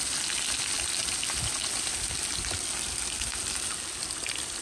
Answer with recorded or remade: recorded